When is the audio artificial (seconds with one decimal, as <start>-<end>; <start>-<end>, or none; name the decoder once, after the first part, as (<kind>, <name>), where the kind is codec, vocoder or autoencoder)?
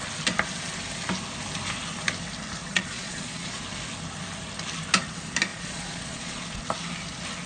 2.6-3.6 (vocoder, Vocos); 5.5-6.6